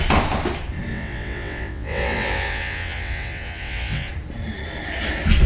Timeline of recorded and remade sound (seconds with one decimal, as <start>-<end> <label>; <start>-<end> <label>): 0.0-0.9 recorded; 0.9-4.1 remade; 4.1-5.5 recorded